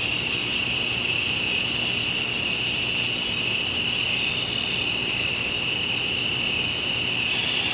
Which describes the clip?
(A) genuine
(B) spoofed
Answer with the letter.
A